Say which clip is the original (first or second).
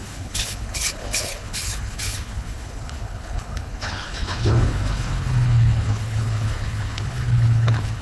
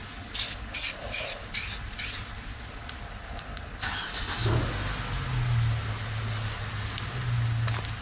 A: second